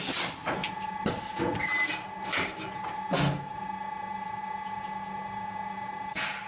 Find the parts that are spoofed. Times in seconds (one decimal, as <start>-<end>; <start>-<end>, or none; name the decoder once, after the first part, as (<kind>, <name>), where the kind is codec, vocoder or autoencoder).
none

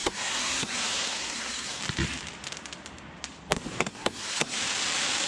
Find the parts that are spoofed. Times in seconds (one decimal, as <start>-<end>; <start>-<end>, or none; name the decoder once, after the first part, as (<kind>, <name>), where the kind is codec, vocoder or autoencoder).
0.0-1.8 (codec, SNAC); 3.8-4.6

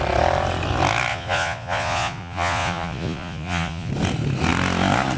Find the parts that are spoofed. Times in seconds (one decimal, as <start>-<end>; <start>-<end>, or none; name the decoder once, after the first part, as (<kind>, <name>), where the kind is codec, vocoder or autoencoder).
1.1-3.9 (vocoder, Vocos)